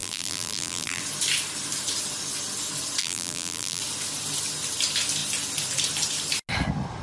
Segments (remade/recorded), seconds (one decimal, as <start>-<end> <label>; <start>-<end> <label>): 0.0-1.0 remade; 1.0-3.0 recorded; 3.0-3.8 remade; 3.8-7.0 recorded